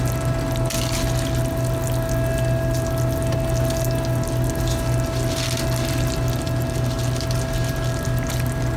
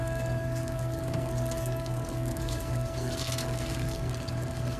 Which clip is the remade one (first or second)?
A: second